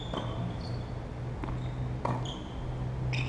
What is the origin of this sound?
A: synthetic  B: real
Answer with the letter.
B